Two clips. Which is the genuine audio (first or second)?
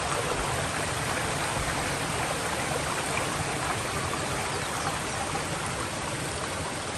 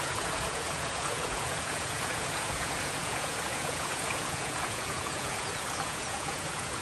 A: first